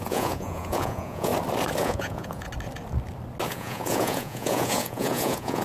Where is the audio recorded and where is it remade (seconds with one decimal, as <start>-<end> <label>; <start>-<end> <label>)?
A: 0.0-1.3 remade; 1.3-1.8 recorded; 1.8-2.5 remade; 2.5-3.5 recorded; 3.5-5.6 remade